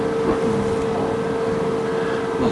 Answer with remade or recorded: recorded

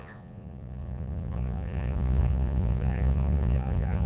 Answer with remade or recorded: remade